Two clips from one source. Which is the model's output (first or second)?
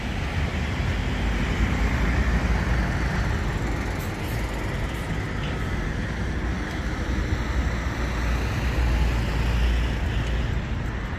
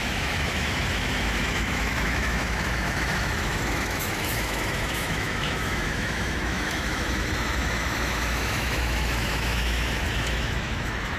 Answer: second